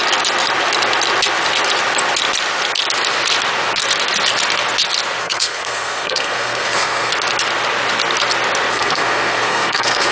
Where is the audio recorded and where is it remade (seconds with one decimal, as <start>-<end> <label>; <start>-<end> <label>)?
0.0-5.2 recorded; 5.2-7.1 remade; 7.1-8.7 recorded; 8.7-10.1 remade